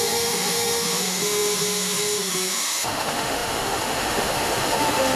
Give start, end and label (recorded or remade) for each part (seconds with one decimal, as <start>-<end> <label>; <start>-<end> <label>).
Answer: 0.0-5.2 remade